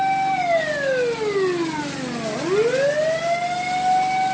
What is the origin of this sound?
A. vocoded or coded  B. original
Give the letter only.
B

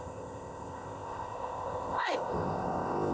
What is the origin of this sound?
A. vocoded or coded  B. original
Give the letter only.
A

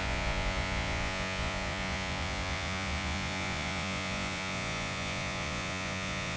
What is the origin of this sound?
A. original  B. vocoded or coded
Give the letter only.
B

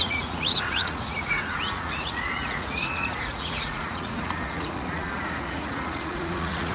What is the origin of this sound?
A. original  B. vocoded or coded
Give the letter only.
B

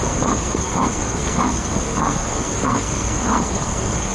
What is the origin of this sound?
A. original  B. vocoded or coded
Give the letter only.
B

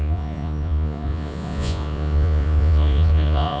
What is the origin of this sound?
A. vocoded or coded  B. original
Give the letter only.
A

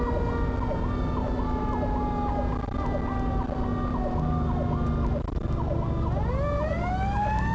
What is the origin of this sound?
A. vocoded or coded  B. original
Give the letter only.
B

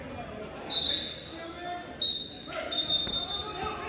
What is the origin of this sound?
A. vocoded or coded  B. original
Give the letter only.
B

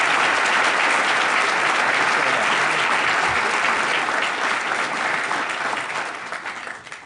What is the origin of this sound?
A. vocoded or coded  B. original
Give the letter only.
B